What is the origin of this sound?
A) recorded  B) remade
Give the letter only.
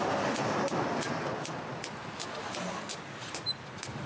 A